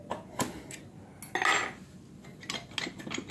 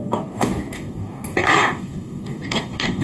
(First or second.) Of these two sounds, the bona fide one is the first